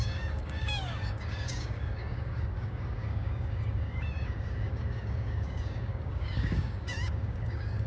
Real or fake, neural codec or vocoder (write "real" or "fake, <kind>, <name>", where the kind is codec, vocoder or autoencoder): fake, codec, DAC